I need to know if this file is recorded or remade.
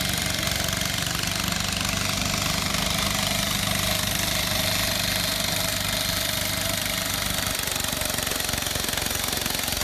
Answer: recorded